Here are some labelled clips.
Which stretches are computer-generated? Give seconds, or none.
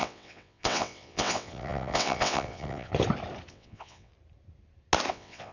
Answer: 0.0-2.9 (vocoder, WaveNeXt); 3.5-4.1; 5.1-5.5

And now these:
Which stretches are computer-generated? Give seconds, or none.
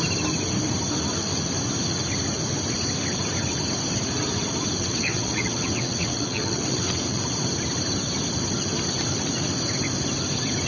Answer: 4.8-7.2 (vocoder, WaveNeXt)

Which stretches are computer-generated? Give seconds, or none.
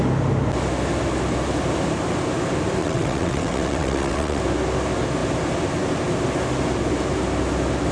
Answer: 2.8-4.4 (vocoder, WaveNeXt)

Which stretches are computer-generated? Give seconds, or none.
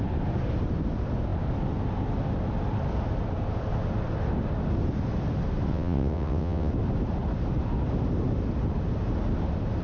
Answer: 5.7-6.7 (vocoder, WaveNeXt)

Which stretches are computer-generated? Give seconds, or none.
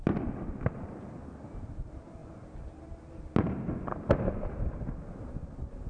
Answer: none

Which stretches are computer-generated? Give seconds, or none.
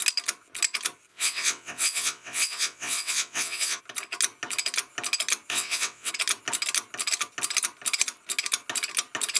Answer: 1.1-3.8 (vocoder, WaveNeXt); 5.5-6.1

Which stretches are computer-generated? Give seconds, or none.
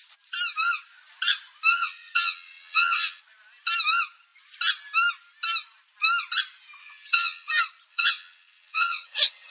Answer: 1.7-3.2 (vocoder, WaveNeXt); 6.8-7.5; 7.9-9.5